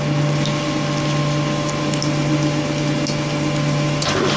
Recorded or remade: recorded